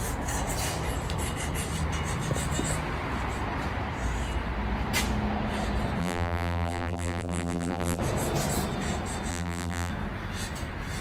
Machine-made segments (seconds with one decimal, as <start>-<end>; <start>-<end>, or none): 6.0-8.0; 9.3-9.9